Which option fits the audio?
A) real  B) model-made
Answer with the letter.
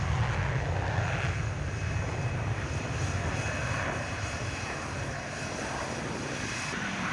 A